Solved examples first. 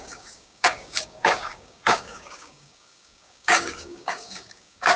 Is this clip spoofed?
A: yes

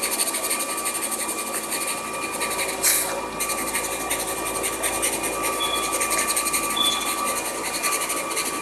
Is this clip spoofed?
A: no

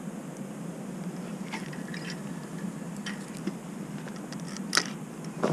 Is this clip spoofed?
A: no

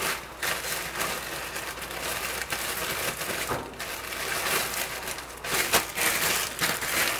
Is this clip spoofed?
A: no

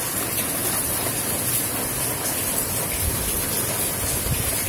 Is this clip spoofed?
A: no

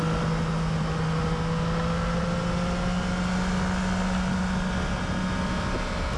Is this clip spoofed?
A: no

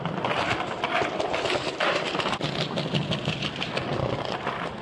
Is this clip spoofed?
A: yes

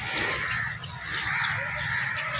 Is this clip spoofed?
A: no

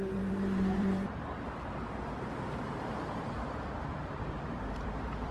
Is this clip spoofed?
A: yes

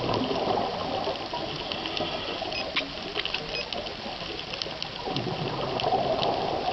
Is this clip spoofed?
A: no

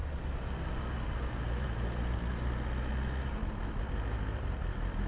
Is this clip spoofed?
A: no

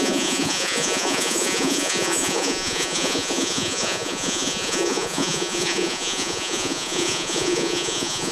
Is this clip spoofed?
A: yes